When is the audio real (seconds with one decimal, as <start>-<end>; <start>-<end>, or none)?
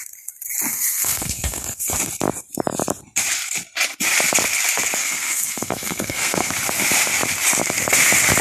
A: 0.0-0.7; 1.9-5.0; 6.5-8.4